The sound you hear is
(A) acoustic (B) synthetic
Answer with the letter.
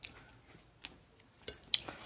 A